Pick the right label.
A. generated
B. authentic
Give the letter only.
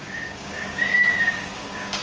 A